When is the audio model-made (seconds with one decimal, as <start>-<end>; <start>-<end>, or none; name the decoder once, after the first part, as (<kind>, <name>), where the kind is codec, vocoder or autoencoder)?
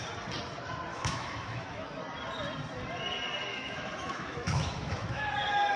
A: 0.9-2.0 (autoencoder, DAC-VAE); 3.5-5.3